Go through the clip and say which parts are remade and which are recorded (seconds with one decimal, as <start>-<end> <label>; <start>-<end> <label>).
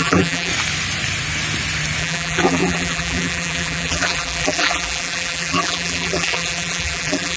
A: 0.0-0.5 remade; 0.5-2.0 recorded; 2.0-7.4 remade